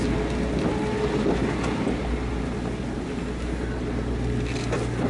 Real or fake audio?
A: real